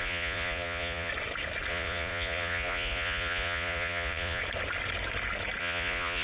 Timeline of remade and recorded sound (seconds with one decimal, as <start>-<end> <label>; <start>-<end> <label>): 0.0-1.1 remade; 1.1-1.7 recorded; 1.7-4.4 remade; 4.4-5.6 recorded; 5.6-6.2 remade